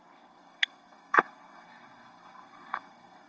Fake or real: fake